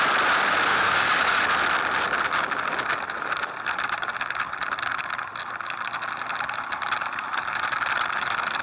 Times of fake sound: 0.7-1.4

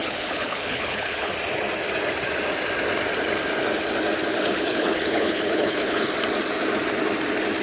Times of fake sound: 0.0-1.3; 4.3-6.1